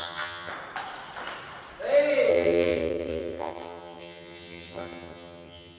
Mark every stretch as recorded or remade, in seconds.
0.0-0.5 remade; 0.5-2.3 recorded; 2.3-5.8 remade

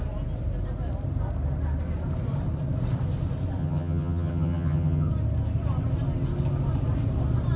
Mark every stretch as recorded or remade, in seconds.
0.0-3.6 recorded; 3.6-5.1 remade; 5.1-7.6 recorded